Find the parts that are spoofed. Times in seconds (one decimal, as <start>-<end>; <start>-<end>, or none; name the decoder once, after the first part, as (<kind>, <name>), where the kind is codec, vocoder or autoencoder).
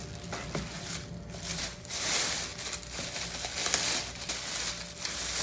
1.5-2.1 (vocoder, BigVGAN v2)